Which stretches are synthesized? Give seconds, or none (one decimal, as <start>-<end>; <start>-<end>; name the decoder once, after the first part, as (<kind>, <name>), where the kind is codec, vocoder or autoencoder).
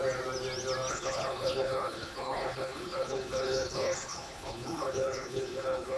0.9-6.0 (codec, HILCodec)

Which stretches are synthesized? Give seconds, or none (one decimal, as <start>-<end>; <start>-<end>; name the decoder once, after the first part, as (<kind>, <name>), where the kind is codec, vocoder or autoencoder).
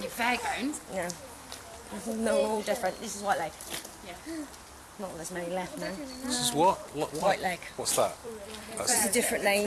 2.4-3.4 (vocoder, BigVGAN v2); 8.2-9.7